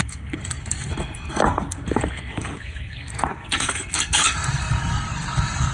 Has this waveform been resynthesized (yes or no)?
yes